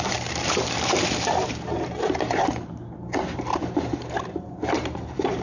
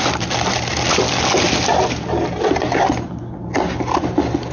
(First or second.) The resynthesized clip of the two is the first